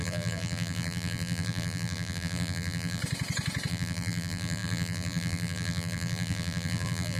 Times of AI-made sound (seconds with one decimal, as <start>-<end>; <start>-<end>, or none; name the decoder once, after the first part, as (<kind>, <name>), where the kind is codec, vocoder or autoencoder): 0.0-3.0 (vocoder, BigVGAN v2); 3.7-7.2